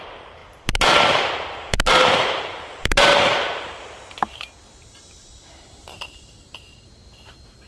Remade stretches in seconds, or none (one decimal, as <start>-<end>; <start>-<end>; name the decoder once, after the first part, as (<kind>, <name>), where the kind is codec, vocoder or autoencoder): 0.0-7.7 (vocoder, BigVGAN v2)